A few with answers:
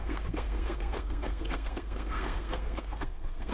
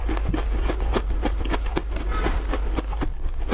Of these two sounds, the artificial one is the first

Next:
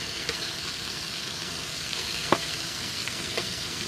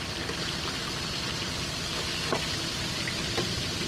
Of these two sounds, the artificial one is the first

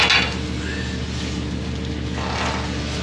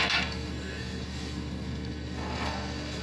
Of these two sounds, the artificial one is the second